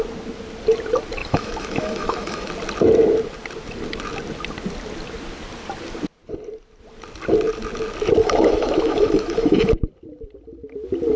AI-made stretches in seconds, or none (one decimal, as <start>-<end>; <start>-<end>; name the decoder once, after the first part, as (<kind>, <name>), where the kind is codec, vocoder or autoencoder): 1.2-2.5 (autoencoder, DAC-VAE); 8.2-9.7